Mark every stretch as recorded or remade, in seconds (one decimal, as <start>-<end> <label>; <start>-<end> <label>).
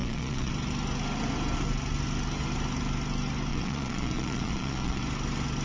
0.0-0.5 remade; 0.5-3.5 recorded; 3.5-5.0 remade; 5.0-5.6 recorded